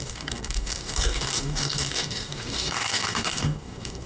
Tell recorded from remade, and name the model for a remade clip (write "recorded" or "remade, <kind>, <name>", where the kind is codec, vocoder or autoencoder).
remade, codec, DAC